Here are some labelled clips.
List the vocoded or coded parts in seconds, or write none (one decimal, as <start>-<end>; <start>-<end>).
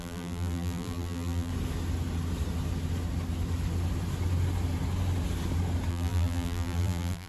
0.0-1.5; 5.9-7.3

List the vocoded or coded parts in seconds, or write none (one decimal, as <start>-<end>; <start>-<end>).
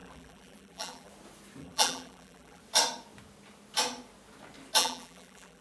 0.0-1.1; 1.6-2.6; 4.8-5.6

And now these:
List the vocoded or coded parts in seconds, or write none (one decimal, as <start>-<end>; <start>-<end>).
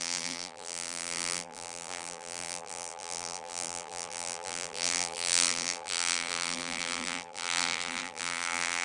0.0-8.8